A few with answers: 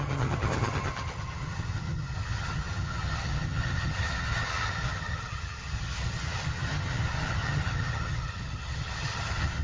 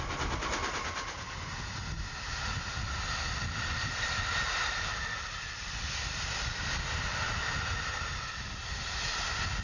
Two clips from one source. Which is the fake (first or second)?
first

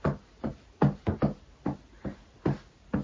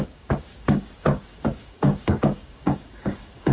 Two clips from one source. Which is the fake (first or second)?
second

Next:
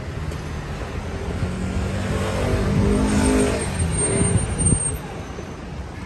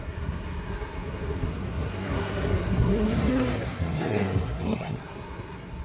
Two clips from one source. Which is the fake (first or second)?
second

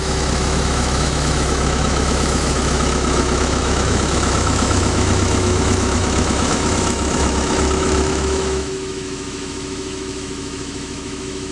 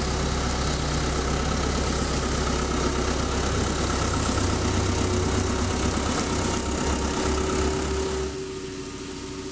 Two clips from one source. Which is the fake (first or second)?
first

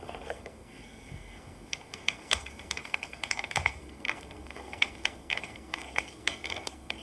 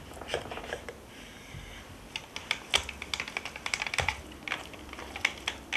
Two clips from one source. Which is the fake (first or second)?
first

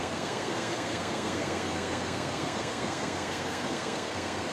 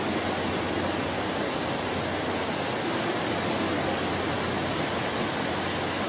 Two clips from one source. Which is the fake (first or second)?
first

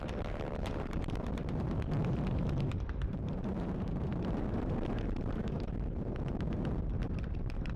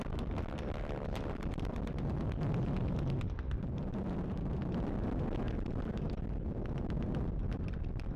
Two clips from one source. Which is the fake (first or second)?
first